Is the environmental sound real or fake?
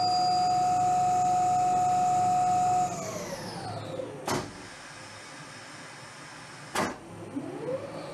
real